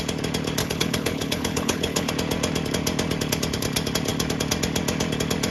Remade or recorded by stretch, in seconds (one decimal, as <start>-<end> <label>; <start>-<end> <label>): 0.0-0.6 recorded; 0.6-2.1 remade; 2.1-5.5 recorded